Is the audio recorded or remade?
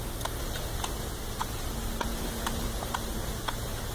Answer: remade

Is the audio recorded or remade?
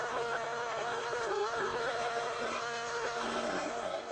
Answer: remade